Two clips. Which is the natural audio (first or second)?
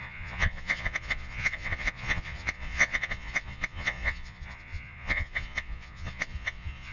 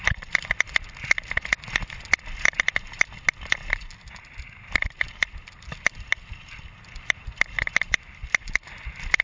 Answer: second